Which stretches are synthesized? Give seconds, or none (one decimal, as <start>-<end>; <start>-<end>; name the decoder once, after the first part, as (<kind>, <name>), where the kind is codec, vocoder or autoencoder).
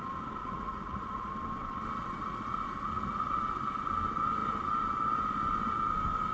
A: 0.4-1.3 (vocoder, Vocos); 2.0-3.4